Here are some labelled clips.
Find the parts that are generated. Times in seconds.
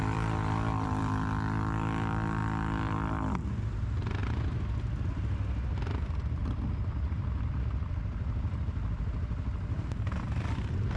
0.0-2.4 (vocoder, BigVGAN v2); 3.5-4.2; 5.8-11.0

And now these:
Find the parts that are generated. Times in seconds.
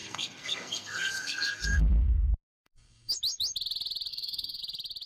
0.0-3.1 (codec, SNAC); 4.1-4.6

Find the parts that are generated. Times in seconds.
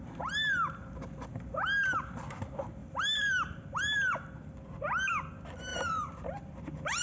2.8-4.1 (vocoder, BigVGAN v2); 5.7-7.0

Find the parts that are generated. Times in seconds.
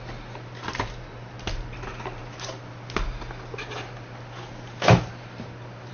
0.7-1.3 (vocoder, BigVGAN v2)